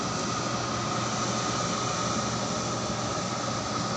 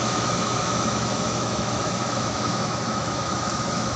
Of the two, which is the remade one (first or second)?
second